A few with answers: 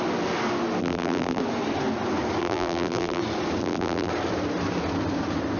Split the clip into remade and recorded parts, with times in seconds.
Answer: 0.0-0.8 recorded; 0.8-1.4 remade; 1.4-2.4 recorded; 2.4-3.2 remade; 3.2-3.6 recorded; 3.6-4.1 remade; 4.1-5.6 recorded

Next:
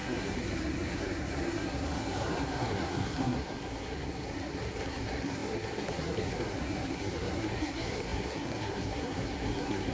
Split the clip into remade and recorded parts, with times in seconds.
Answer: 0.0-9.9 remade

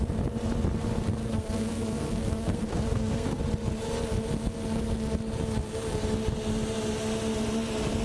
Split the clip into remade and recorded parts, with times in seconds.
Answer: 0.0-1.2 recorded; 1.2-3.4 remade; 3.4-8.0 recorded

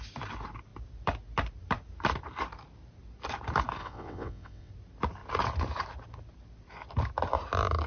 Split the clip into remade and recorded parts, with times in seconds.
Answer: 0.0-3.8 recorded; 3.8-4.7 remade; 4.7-7.9 recorded